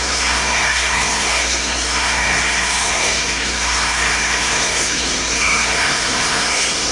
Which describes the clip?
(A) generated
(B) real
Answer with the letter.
A